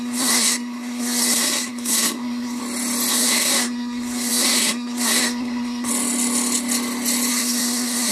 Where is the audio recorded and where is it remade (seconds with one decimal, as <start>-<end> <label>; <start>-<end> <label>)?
0.0-2.6 remade; 2.6-3.1 recorded; 3.1-5.9 remade; 5.9-7.3 recorded; 7.3-8.1 remade